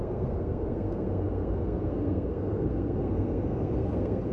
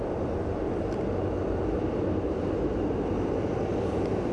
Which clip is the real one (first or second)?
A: second